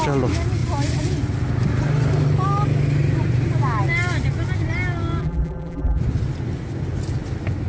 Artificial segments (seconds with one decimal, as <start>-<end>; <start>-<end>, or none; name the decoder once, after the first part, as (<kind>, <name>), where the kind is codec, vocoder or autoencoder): 5.2-6.0 (vocoder, BigVGAN v2)